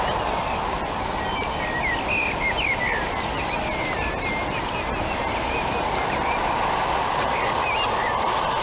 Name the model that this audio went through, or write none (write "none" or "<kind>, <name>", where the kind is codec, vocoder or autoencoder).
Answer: none